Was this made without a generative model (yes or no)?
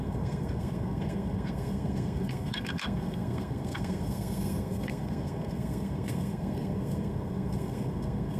no